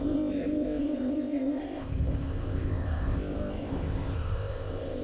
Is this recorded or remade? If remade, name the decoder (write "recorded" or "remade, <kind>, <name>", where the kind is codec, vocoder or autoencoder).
remade, codec, ZipCodec